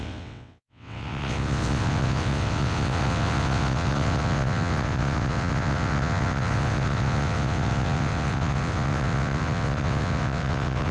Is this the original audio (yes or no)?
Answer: no